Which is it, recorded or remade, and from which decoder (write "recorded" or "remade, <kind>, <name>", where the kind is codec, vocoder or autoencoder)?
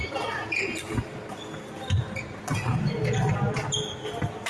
recorded